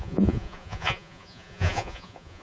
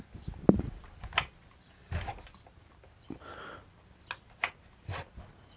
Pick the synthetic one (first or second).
first